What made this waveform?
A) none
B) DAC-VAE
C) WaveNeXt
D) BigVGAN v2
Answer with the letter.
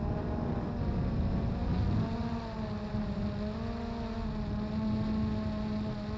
A